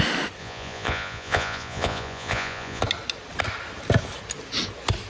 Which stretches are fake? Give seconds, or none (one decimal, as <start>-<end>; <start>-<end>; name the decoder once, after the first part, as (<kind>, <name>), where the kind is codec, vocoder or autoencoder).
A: 0.4-2.8 (vocoder, Vocos)